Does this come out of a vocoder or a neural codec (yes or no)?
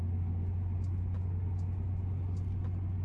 no